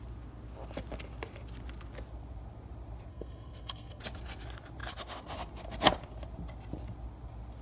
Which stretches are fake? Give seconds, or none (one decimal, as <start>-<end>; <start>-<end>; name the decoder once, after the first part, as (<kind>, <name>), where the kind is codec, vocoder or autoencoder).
3.1-4.0 (codec, SNAC)